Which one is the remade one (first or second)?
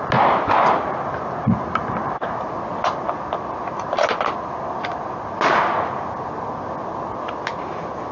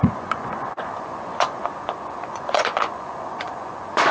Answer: second